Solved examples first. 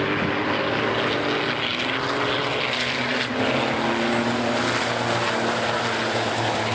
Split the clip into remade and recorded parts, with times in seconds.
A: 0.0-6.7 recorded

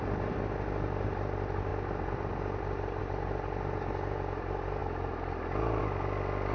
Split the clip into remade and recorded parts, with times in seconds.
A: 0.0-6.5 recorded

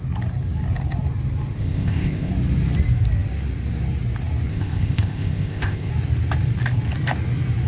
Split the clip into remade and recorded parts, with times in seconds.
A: 0.0-1.6 recorded; 1.6-2.3 remade; 2.3-4.5 recorded; 4.5-5.9 remade; 5.9-7.7 recorded